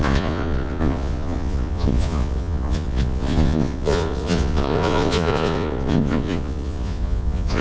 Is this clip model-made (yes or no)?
yes